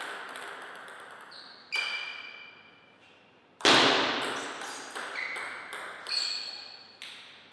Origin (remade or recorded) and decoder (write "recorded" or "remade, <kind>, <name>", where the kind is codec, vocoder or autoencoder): recorded